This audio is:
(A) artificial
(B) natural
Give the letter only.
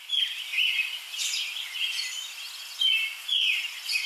B